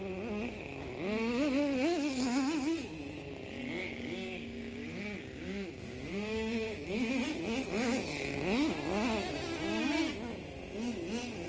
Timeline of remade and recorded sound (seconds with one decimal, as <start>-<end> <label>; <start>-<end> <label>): 0.0-3.8 recorded; 3.8-7.1 remade; 7.1-11.5 recorded